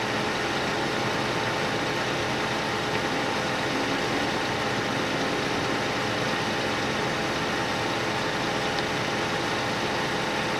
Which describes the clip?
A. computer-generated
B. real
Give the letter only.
B